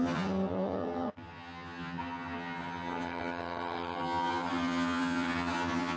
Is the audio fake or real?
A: fake